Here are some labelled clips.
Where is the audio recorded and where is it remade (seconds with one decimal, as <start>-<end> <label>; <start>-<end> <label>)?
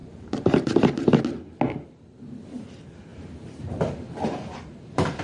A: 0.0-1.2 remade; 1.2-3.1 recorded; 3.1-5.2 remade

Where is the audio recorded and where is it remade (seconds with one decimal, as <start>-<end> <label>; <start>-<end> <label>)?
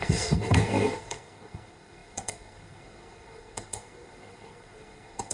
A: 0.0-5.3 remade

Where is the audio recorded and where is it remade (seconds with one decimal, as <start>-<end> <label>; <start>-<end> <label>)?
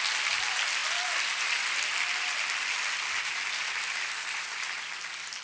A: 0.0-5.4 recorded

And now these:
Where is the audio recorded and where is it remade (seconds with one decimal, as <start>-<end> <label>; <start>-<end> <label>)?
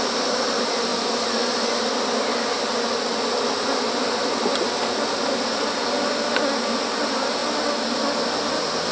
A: 0.0-8.9 recorded